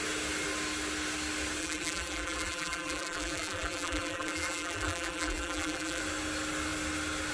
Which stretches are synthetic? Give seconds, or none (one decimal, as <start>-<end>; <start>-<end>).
1.6-6.0